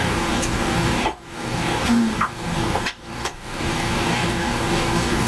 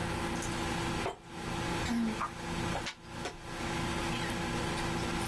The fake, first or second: first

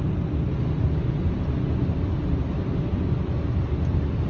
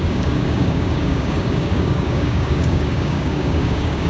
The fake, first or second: second